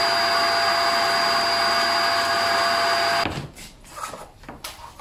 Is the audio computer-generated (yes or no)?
no